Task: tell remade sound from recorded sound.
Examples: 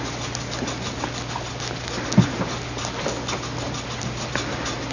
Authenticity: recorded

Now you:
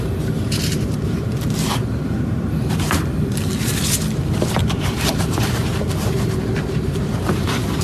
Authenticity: remade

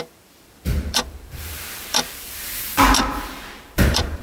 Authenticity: remade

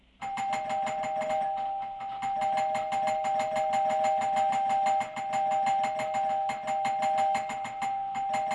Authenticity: recorded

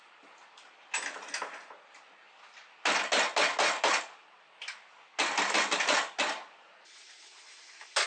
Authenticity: recorded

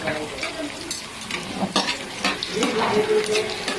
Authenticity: recorded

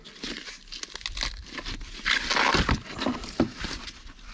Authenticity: recorded